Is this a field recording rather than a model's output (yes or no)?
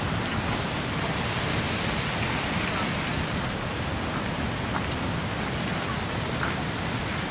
yes